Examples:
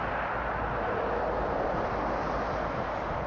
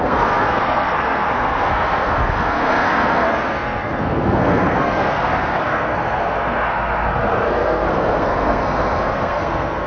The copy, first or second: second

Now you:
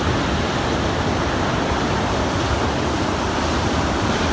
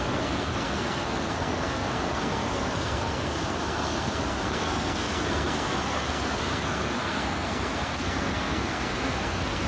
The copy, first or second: second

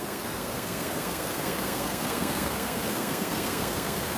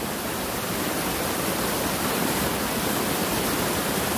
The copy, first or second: first